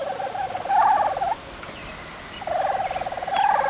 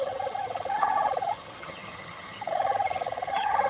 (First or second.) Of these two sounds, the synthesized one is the second